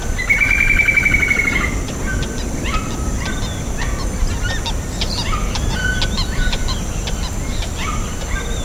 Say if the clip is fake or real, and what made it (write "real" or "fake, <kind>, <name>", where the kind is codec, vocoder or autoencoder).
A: real